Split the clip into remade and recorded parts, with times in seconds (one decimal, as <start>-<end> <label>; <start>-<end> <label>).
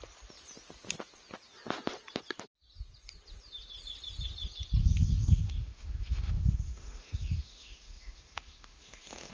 0.0-4.8 recorded; 4.8-9.3 remade